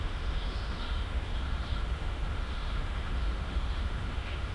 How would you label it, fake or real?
fake